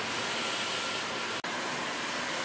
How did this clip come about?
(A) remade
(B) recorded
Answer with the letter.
B